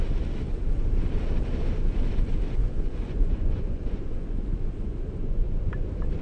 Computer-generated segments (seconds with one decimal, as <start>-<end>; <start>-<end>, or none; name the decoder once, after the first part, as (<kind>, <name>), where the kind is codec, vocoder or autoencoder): 2.6-5.7 (vocoder, Vocos)